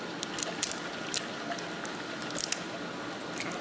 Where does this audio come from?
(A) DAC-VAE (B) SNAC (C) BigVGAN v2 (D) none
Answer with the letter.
D